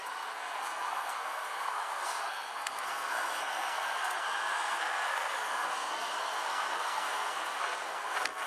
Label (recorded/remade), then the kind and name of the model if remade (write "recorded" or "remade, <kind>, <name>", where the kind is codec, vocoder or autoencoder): remade, codec, SNAC